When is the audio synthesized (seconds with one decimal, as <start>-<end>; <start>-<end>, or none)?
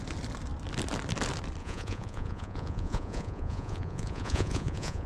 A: 1.6-5.1